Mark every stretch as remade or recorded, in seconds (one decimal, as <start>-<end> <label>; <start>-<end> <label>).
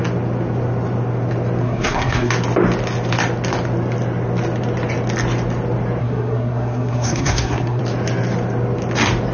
0.0-1.6 recorded; 1.6-2.3 remade; 2.3-6.0 recorded; 6.0-7.8 remade; 7.8-9.3 recorded